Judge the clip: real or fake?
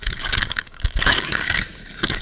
fake